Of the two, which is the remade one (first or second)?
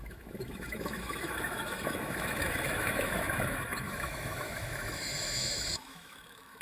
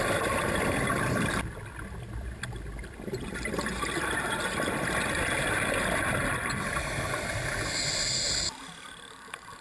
first